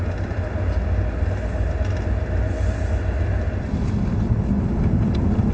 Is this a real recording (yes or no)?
yes